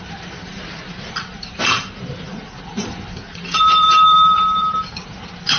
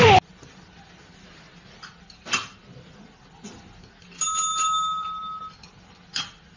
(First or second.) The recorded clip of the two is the second